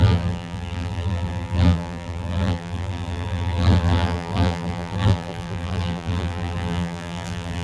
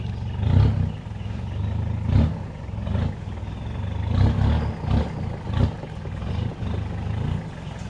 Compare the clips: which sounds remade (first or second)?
first